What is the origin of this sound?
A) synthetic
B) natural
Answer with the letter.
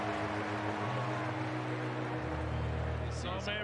B